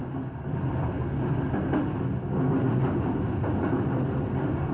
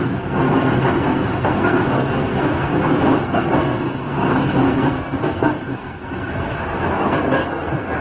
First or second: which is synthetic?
second